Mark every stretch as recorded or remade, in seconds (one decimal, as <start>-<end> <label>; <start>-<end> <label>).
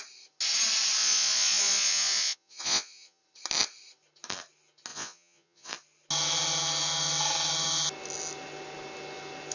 0.0-1.0 recorded; 1.0-3.2 remade; 3.2-4.9 recorded; 4.9-5.7 remade; 5.7-9.5 recorded